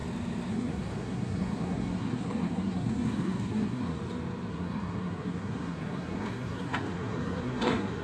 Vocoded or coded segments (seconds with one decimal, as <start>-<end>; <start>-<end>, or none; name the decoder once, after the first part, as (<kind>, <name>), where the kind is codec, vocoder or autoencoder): 0.5-4.0 (codec, SNAC); 4.5-8.0